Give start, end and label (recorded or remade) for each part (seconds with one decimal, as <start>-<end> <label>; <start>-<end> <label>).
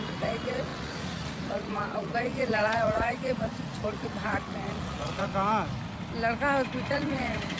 0.0-5.3 remade; 5.3-6.8 recorded; 6.8-7.6 remade